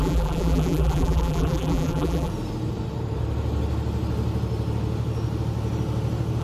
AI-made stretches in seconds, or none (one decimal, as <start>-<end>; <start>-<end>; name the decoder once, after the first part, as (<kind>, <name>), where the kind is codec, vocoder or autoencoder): 0.0-2.3 (vocoder, BigVGAN v2)